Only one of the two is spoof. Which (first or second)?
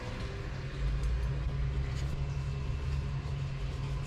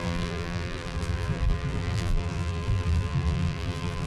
second